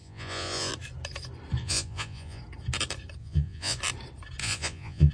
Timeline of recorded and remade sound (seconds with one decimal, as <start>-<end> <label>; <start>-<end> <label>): 0.0-0.7 remade; 0.7-1.6 recorded; 1.6-2.4 remade; 2.4-3.2 recorded; 3.2-3.8 remade; 3.8-4.4 recorded; 4.4-5.1 remade